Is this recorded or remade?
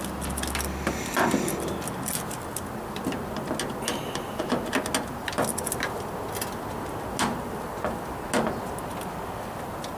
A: recorded